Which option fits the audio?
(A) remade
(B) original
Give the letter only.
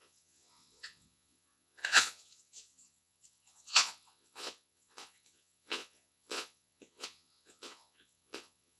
A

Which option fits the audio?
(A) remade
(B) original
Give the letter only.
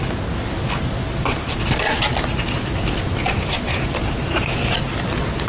B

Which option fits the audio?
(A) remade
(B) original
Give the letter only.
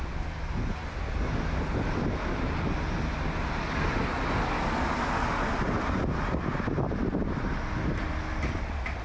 B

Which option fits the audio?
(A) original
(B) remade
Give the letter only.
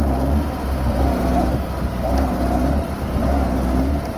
A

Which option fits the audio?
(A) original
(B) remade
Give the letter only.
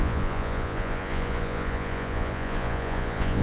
B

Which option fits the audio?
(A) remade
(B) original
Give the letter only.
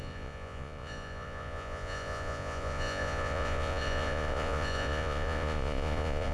A